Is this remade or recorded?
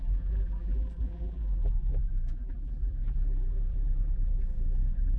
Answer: remade